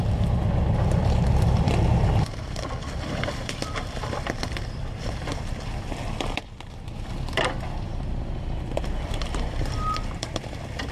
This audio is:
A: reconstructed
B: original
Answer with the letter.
A